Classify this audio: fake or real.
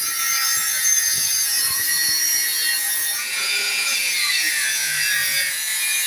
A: fake